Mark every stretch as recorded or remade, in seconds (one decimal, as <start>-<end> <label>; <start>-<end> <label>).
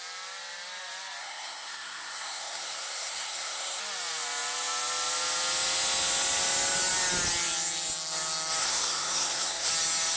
0.0-1.2 recorded; 1.2-3.8 remade; 3.8-8.6 recorded; 8.6-9.7 remade; 9.7-10.2 recorded